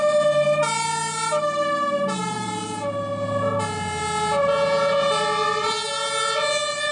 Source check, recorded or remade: recorded